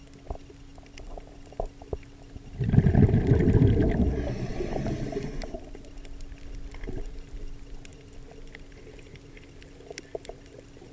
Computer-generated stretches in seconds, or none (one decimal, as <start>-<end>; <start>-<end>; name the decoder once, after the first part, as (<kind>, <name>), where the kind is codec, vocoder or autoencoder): 0.7-1.5 (vocoder, BigVGAN v2)